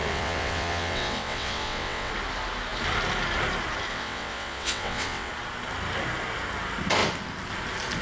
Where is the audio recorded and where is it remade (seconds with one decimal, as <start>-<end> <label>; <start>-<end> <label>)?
0.0-2.1 remade; 2.1-3.9 recorded; 3.9-5.3 remade; 5.3-8.0 recorded